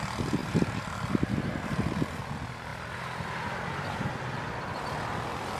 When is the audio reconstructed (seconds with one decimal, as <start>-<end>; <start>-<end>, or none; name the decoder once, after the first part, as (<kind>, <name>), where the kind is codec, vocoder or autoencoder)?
none